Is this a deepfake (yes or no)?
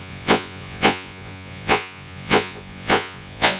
yes